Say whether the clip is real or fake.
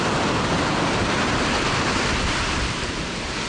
real